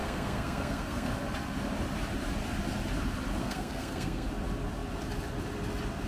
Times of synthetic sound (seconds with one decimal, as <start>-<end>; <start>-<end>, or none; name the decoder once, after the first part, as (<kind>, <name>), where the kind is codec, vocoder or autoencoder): 0.0-1.1 (codec, SNAC); 3.4-4.3